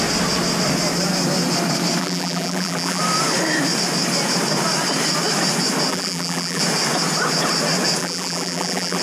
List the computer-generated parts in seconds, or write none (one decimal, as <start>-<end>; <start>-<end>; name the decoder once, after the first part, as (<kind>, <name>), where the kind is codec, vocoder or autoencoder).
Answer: 2.0-3.0 (vocoder, BigVGAN v2); 5.9-6.6; 8.0-9.0